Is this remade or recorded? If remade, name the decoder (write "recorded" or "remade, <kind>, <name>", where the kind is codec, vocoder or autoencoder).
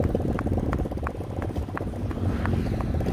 recorded